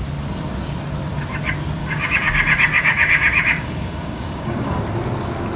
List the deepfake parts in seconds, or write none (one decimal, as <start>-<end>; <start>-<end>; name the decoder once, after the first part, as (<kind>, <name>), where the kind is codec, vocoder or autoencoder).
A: 1.8-4.8 (codec, DAC)